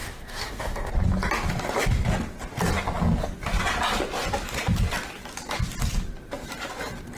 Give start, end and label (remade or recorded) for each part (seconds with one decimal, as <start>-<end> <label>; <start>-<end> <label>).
0.0-0.9 remade; 0.9-7.2 recorded